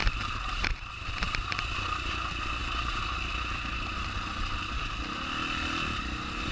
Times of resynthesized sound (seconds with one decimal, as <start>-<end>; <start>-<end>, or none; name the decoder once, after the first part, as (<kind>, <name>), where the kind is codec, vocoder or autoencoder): 0.0-2.1 (vocoder, BigVGAN v2)